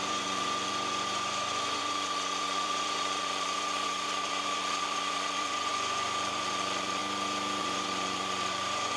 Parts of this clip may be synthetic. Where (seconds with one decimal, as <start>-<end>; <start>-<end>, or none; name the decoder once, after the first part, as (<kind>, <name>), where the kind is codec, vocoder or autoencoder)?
0.0-7.0 (vocoder, Vocos); 7.6-9.0